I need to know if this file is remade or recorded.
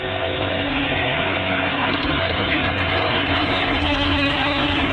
remade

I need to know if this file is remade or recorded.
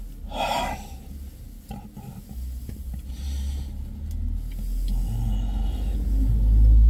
recorded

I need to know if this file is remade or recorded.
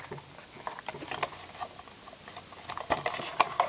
recorded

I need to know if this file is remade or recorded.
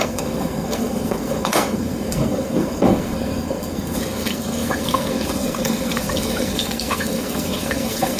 remade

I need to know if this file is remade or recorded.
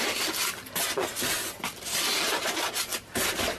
recorded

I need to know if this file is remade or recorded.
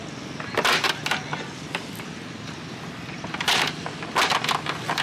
recorded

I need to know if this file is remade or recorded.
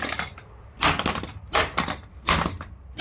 recorded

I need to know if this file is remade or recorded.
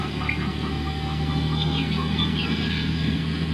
remade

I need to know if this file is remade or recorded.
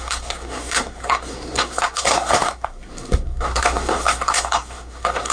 remade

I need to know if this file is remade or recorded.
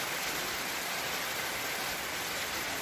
recorded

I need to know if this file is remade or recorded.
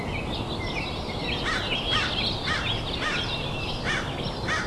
recorded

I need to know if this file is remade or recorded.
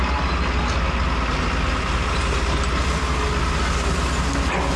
recorded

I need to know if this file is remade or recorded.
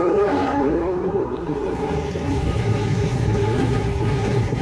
remade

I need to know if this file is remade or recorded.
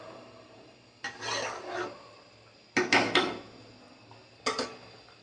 recorded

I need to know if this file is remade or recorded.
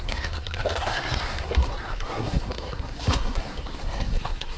remade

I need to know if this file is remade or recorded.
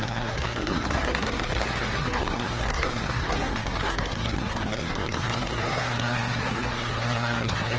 remade